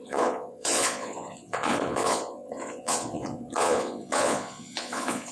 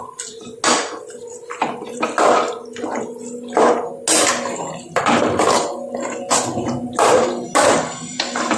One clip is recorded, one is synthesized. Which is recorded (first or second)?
second